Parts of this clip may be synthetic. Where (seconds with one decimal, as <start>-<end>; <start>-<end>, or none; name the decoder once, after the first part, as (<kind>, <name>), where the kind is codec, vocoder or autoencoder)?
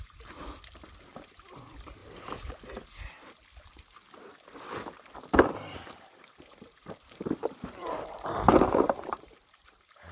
0.0-0.4 (vocoder, BigVGAN v2); 1.1-2.0; 5.5-10.1